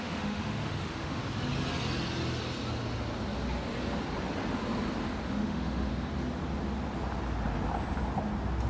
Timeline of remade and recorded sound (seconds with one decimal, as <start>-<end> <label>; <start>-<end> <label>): 0.0-1.2 remade; 1.2-5.3 recorded; 5.3-5.9 remade; 5.9-8.7 recorded